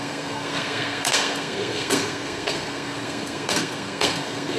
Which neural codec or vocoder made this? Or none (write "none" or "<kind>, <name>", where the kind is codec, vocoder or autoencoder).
codec, SNAC